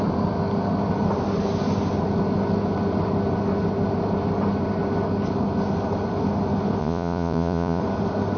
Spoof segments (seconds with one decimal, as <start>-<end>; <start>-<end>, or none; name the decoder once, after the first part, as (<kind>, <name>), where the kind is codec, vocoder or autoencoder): 6.8-7.8 (vocoder, Vocos)